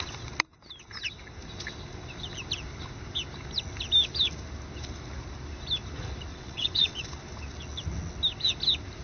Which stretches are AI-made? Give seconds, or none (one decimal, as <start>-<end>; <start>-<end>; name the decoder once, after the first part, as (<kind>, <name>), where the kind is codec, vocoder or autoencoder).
6.3-7.1 (vocoder, WaveNeXt)